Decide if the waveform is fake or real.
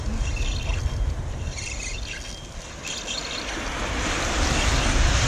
real